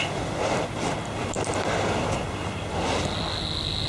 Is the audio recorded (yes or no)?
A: yes